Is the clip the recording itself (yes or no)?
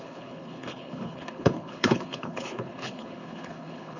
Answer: no